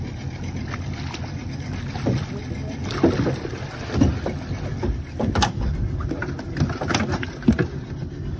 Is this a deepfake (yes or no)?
no